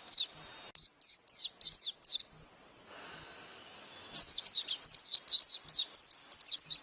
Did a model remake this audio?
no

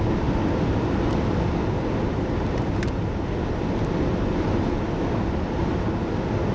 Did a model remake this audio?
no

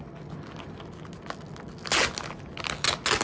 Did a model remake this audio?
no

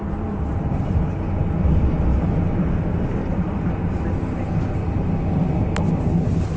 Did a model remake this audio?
no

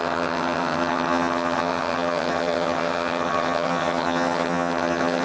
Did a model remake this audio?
yes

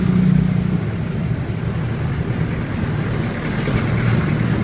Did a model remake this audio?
no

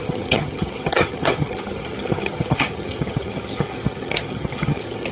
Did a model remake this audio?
yes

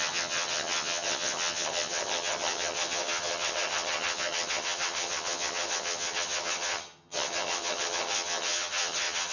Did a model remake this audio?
yes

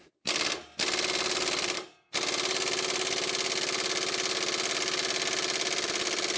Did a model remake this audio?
no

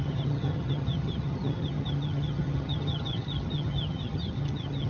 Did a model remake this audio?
yes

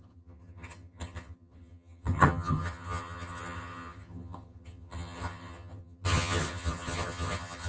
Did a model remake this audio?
yes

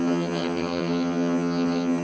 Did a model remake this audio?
yes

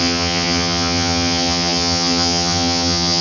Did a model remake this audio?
yes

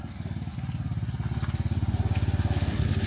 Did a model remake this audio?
no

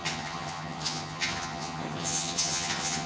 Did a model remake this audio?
yes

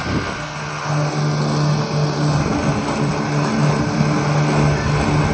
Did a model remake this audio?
no